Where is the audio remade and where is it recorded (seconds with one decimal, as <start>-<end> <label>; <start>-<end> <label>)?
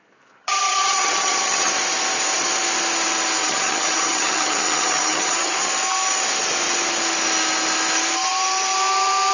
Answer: 0.0-0.4 recorded; 0.4-1.7 remade; 1.7-3.4 recorded; 3.4-5.7 remade; 5.7-9.3 recorded